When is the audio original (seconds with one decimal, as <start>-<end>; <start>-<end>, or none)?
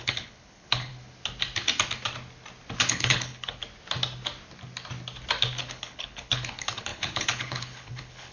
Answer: 0.9-2.9; 3.6-5.6